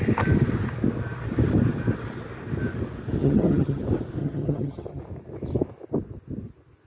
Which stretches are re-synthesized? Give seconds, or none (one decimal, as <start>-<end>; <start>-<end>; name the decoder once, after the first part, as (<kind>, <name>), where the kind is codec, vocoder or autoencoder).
3.2-3.8 (vocoder, HiFi-GAN); 4.2-5.0